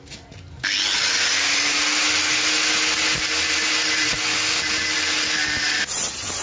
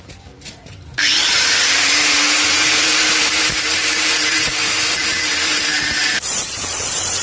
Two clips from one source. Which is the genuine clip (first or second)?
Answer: first